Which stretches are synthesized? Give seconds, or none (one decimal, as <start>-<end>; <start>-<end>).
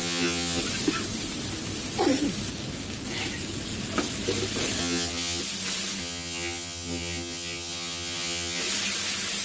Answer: 0.0-0.6; 4.8-5.4; 6.0-8.6